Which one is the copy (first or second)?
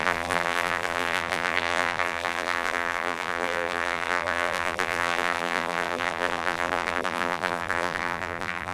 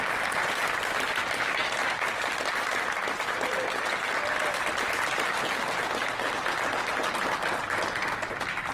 first